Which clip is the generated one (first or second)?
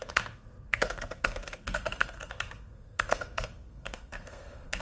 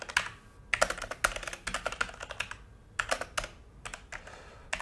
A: first